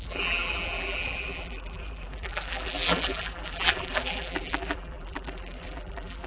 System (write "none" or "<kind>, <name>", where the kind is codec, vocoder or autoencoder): vocoder, BigVGAN v2